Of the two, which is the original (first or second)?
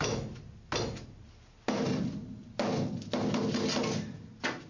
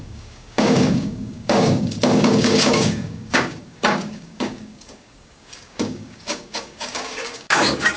first